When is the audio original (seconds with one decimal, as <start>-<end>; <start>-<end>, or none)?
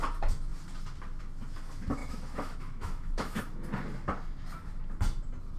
0.0-2.0; 3.4-5.6